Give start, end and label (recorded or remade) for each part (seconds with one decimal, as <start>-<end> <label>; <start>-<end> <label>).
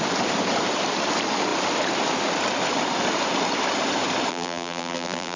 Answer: 0.0-4.3 recorded; 4.3-5.4 remade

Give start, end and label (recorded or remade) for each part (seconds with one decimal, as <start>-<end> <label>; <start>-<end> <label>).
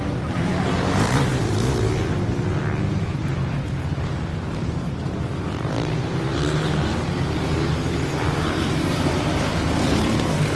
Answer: 0.0-1.3 remade; 1.3-2.9 recorded; 2.9-10.6 remade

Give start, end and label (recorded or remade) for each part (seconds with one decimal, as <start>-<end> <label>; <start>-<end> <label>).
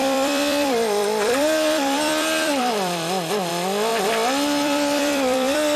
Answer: 0.0-3.5 remade; 3.5-3.9 recorded; 3.9-5.8 remade